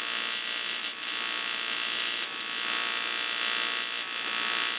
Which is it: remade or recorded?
recorded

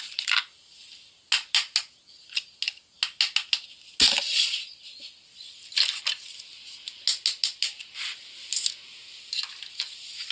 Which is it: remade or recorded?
recorded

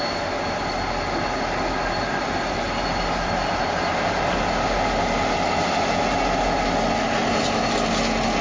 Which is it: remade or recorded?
recorded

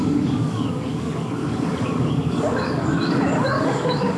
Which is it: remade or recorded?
remade